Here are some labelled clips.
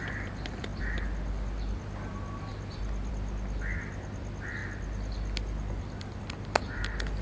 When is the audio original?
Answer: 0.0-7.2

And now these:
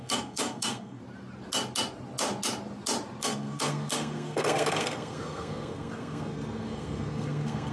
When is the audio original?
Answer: 1.0-3.2

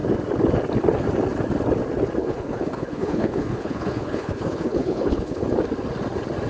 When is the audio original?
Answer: 0.0-2.2; 5.4-6.5

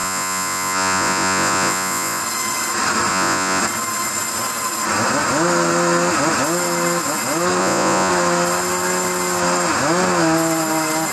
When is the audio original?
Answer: 2.2-3.1; 3.6-7.6; 8.1-11.1

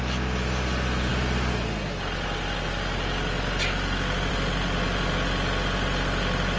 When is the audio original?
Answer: 0.0-6.6

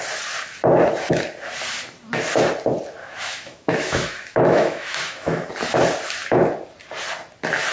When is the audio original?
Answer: 0.0-3.0; 5.5-7.7

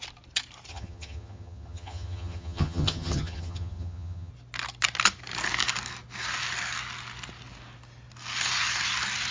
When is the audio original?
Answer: 0.0-0.7; 4.3-9.3